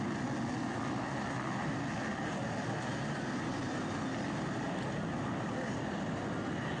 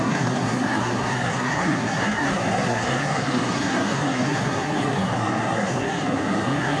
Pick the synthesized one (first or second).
second